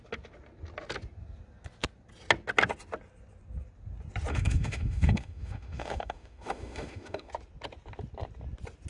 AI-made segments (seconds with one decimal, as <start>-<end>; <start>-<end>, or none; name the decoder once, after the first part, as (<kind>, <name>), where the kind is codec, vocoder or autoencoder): 4.3-7.3 (autoencoder, DAC-VAE)